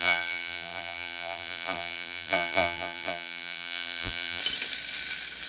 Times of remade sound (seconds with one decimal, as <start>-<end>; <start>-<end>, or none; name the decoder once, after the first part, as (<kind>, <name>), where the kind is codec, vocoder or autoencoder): 0.0-4.4 (vocoder, BigVGAN v2)